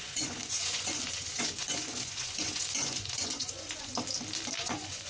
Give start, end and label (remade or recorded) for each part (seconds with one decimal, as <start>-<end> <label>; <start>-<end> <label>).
0.0-3.9 remade; 3.9-4.6 recorded; 4.6-5.1 remade